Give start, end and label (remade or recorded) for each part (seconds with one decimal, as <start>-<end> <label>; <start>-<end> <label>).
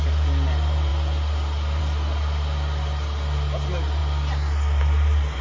0.0-5.4 recorded